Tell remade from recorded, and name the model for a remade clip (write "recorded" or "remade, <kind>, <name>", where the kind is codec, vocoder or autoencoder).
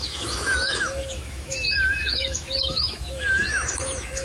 remade, autoencoder, DAC-VAE